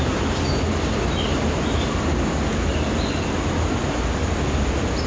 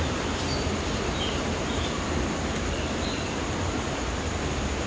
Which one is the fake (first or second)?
second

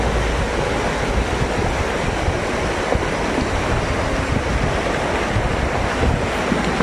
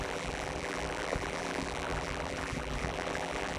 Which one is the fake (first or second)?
second